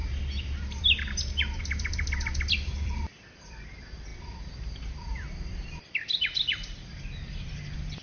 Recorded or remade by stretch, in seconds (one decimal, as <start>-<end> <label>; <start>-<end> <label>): 0.0-1.6 recorded; 1.6-8.0 remade